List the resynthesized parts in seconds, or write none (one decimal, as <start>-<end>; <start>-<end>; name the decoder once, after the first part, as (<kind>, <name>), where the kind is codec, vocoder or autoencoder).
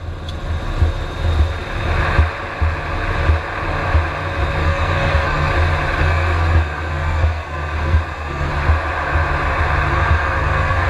4.6-5.5 (codec, SNAC); 6.0-8.5; 9.9-10.9